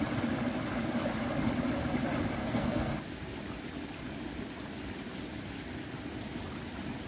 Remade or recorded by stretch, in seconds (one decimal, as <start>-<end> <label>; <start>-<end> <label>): 0.0-2.4 recorded; 2.4-2.9 remade; 2.9-7.1 recorded